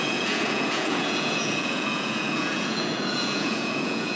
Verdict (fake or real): fake